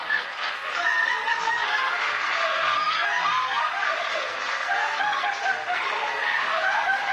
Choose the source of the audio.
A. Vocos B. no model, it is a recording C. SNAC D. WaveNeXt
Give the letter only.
C